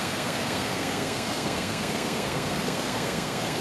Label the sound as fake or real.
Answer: fake